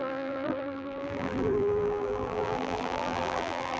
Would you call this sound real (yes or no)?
no